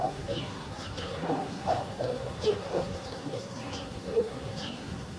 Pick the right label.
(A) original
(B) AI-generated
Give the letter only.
B